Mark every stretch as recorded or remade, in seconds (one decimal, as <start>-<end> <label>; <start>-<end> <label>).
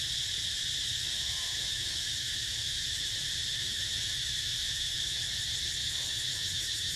0.0-0.9 recorded; 0.9-3.1 remade; 3.1-3.5 recorded; 3.5-5.2 remade; 5.2-5.8 recorded; 5.8-7.0 remade